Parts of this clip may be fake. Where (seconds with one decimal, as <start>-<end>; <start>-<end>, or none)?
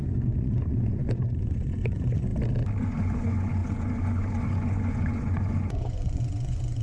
0.0-2.3; 2.8-6.8